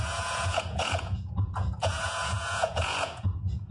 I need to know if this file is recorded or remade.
remade